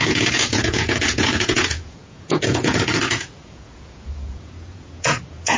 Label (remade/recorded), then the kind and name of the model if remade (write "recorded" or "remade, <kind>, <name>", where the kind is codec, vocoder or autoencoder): remade, vocoder, Vocos